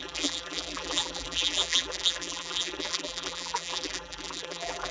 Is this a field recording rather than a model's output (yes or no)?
no